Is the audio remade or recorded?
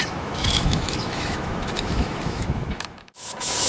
remade